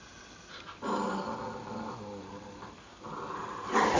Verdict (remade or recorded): recorded